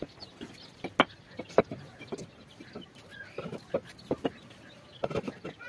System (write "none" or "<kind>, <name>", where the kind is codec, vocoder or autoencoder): none